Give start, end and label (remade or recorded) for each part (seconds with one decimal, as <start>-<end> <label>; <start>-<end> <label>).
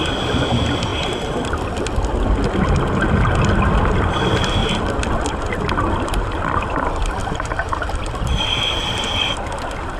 0.0-7.2 recorded; 7.2-8.0 remade; 8.0-10.0 recorded